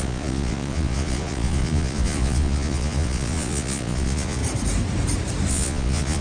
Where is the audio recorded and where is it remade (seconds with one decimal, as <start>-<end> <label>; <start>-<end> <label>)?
0.0-4.4 remade; 4.4-5.5 recorded; 5.5-6.2 remade

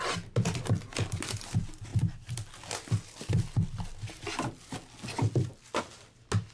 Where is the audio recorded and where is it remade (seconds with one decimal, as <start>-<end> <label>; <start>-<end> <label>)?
0.0-6.5 recorded